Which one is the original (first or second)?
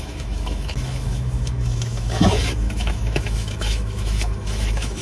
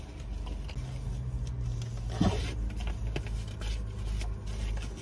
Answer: second